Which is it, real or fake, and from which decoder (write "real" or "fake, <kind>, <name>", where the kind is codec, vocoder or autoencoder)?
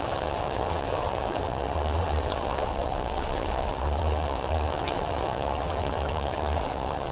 fake, vocoder, WaveNeXt